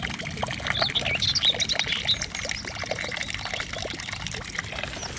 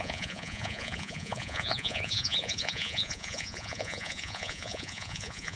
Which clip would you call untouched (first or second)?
first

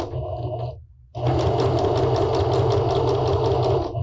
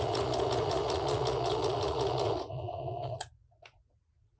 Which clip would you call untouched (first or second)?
first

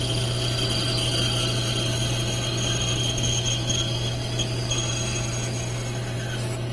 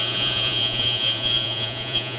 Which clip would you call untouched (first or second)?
first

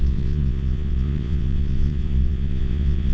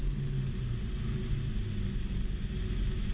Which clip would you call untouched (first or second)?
second